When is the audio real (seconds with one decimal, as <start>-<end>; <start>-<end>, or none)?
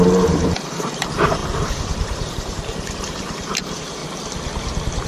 4.0-5.1